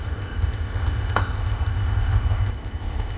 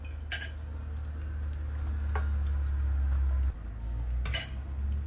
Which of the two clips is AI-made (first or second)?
first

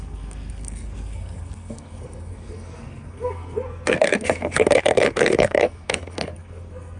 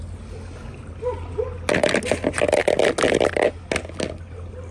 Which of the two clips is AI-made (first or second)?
first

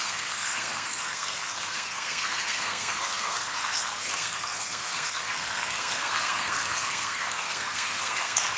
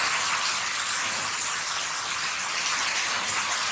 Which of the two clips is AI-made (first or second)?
first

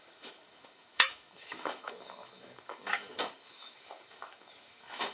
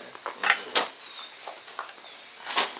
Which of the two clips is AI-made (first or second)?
first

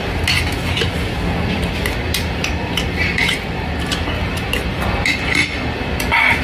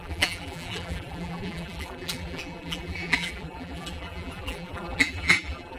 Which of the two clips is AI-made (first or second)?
second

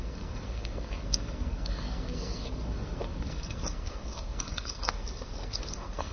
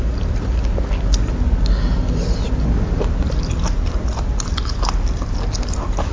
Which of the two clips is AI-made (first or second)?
first